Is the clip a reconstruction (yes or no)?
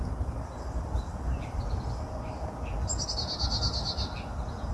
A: no